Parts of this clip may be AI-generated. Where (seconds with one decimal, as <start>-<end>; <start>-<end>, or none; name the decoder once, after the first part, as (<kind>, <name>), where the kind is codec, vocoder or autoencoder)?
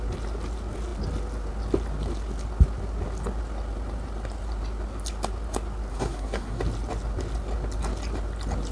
5.9-6.6 (codec, SNAC)